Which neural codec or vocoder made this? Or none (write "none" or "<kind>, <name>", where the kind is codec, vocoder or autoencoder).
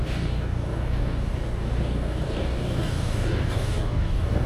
codec, DAC